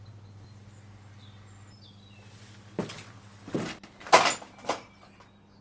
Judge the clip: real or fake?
real